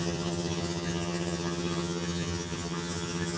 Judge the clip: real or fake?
fake